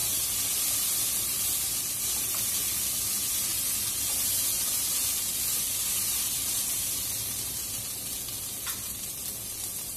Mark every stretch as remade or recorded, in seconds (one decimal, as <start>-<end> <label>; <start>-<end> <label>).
0.0-10.0 recorded